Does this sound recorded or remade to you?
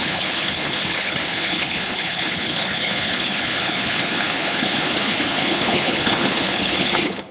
remade